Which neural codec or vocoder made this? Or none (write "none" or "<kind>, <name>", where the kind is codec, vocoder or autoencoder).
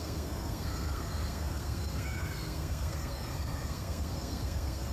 codec, SNAC